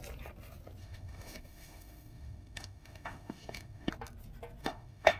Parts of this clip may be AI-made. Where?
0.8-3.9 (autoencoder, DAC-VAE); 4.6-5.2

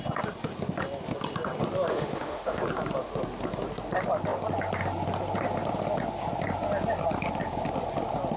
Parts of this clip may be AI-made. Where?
1.9-2.6 (autoencoder, DAC-VAE)

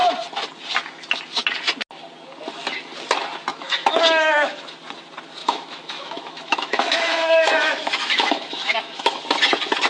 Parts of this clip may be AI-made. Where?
3.5-4.6 (autoencoder, DAC-VAE); 5.4-9.2

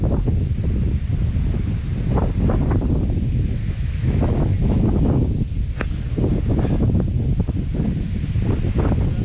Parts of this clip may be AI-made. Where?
3.6-4.8 (autoencoder, DAC-VAE)

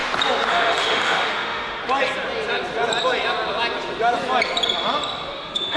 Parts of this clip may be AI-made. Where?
0.5-1.8 (autoencoder, DAC-VAE); 5.3-5.8